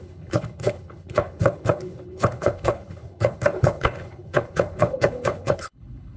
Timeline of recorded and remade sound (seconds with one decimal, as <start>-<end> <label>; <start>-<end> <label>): 0.0-6.2 remade